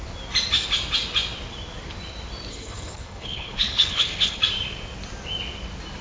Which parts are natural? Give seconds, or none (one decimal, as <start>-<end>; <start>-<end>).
0.0-2.5; 4.4-6.0